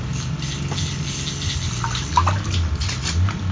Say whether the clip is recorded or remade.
recorded